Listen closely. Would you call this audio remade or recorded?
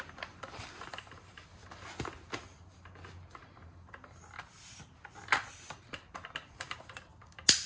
recorded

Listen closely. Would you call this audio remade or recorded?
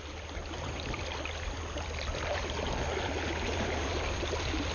recorded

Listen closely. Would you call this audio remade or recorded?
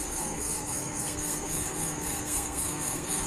remade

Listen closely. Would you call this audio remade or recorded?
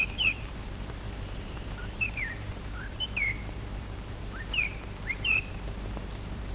remade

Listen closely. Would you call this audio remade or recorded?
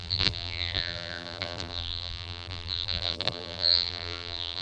remade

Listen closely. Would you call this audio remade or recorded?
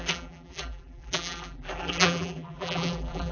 remade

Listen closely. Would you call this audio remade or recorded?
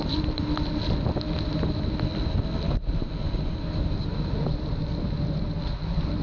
recorded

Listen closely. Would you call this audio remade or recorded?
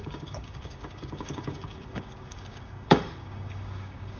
remade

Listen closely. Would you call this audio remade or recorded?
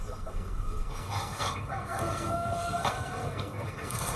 remade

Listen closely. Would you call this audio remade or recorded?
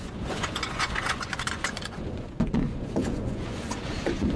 remade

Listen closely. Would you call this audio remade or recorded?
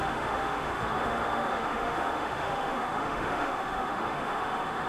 remade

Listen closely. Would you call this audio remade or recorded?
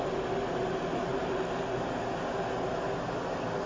recorded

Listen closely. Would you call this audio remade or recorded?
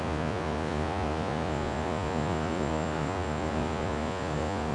remade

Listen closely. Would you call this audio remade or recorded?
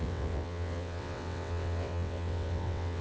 remade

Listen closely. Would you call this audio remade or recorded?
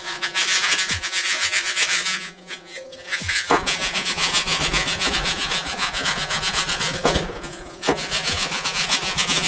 remade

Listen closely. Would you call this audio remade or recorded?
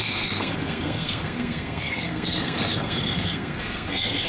remade